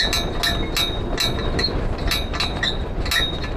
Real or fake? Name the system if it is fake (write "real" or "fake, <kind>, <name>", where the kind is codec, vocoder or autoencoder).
real